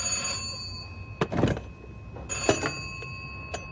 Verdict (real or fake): real